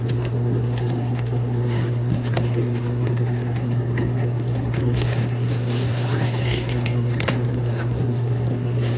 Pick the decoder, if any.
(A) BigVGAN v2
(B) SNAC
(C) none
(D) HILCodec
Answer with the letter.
B